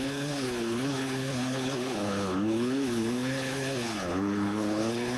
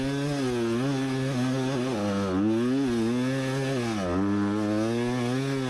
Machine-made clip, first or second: first